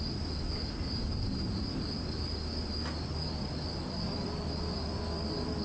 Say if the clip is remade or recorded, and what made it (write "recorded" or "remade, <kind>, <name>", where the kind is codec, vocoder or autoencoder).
recorded